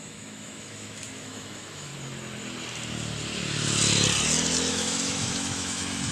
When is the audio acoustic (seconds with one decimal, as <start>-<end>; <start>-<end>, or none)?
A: 1.9-4.7